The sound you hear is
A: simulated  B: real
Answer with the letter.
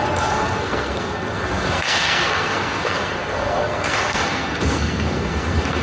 A